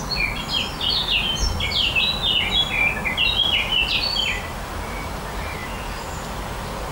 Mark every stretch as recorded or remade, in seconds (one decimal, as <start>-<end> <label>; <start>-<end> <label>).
0.0-6.9 recorded